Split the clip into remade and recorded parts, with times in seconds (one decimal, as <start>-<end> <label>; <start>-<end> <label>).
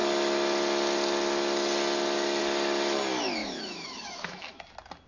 0.0-3.4 recorded; 3.4-4.6 remade; 4.6-5.1 recorded